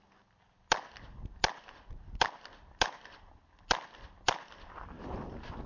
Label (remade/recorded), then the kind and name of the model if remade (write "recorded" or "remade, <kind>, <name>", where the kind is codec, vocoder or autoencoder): recorded